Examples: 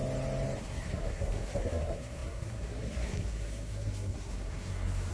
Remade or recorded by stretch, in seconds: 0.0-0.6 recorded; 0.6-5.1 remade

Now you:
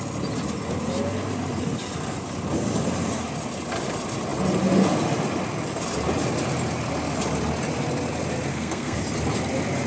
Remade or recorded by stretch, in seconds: 0.0-8.5 recorded; 8.5-9.0 remade; 9.0-9.9 recorded

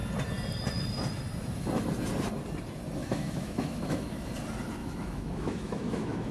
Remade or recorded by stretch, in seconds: 0.0-3.0 recorded; 3.0-4.3 remade; 4.3-4.8 recorded; 4.8-6.3 remade

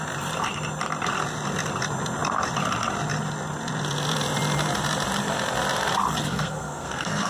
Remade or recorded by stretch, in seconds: 0.0-6.2 recorded; 6.2-7.3 remade

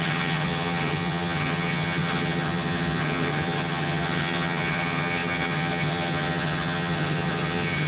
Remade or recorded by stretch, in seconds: 0.0-7.9 remade

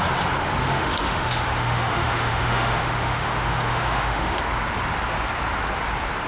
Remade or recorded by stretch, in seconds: 0.0-0.6 recorded; 0.6-4.4 remade; 4.4-6.3 recorded

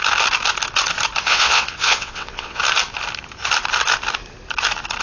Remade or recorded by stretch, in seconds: 0.0-1.2 recorded; 1.2-2.6 remade; 2.6-5.0 recorded

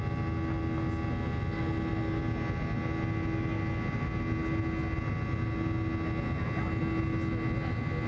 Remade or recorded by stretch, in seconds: 0.0-8.1 recorded